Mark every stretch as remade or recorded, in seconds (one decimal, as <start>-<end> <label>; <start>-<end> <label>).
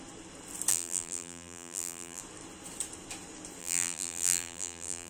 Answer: 0.0-0.7 recorded; 0.7-2.2 remade; 2.2-3.6 recorded; 3.6-5.1 remade